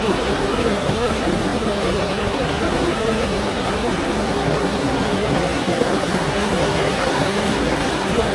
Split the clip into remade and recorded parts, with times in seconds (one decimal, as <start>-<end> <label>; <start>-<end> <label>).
0.0-8.3 remade